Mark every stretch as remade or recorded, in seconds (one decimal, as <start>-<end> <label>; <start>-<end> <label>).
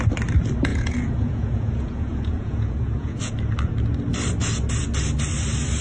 0.0-0.7 recorded; 0.7-3.3 remade; 3.3-5.8 recorded